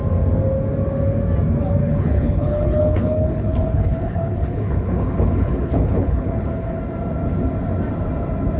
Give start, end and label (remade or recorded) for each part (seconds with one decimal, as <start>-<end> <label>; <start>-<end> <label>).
0.0-1.8 recorded; 1.8-6.8 remade; 6.8-8.6 recorded